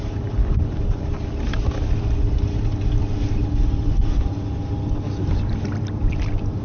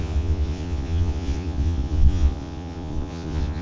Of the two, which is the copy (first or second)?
second